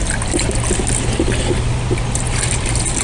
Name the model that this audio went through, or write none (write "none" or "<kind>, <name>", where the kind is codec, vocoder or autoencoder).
none